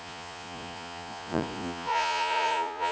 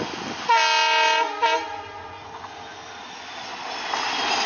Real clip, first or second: second